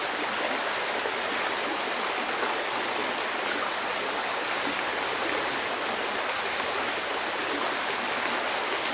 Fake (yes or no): no